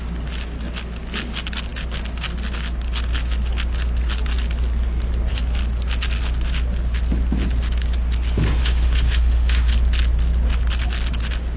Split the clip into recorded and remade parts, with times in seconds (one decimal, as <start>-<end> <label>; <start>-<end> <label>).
0.0-8.6 recorded; 8.6-9.7 remade; 9.7-11.6 recorded